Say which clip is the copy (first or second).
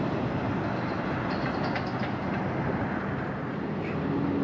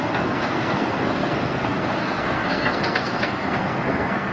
second